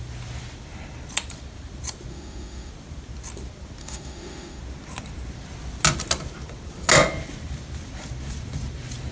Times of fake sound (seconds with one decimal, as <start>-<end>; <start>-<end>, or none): 2.1-2.7; 3.8-4.6